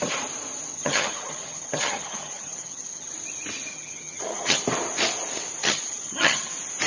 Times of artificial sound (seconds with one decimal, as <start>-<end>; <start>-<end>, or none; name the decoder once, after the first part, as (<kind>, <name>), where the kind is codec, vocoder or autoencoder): 0.7-3.1 (vocoder, HiFi-GAN); 3.7-4.6; 5.6-6.5